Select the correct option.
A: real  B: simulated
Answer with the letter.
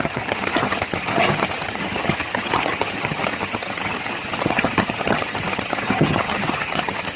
B